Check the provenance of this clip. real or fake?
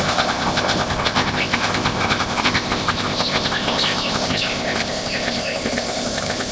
fake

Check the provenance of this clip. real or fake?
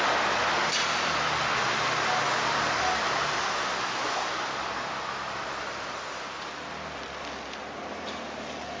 real